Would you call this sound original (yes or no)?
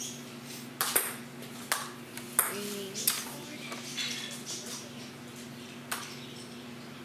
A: yes